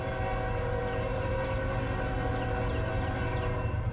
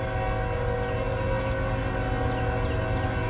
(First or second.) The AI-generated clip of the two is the first